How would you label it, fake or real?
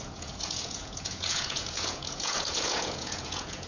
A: fake